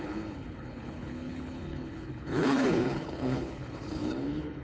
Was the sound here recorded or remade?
remade